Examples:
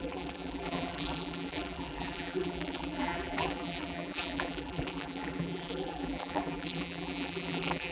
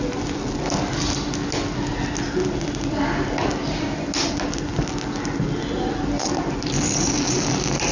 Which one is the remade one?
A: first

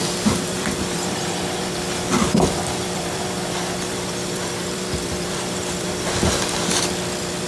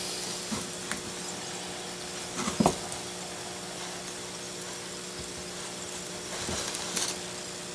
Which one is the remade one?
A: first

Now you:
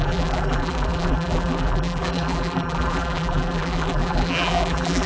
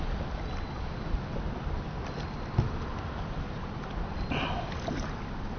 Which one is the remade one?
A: first